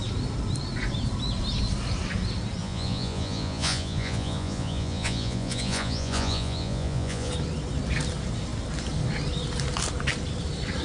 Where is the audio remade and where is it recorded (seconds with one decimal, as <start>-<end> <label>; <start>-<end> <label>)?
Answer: 0.0-2.6 recorded; 2.6-7.3 remade; 7.3-10.8 recorded